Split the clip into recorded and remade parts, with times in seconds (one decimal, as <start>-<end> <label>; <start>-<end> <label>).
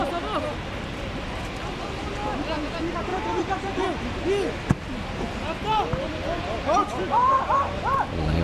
0.0-3.1 recorded; 3.1-3.8 remade; 3.8-8.4 recorded